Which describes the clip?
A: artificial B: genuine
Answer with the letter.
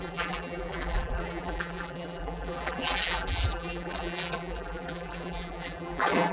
A